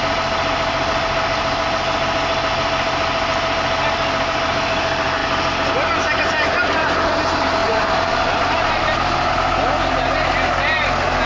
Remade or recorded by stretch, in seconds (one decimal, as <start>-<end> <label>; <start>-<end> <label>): 0.0-7.6 recorded; 7.6-9.3 remade; 9.3-11.3 recorded